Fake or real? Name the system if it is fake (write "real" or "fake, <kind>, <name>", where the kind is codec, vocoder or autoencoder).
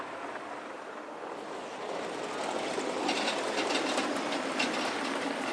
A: real